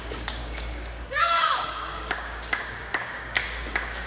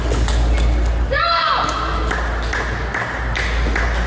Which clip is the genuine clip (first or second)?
second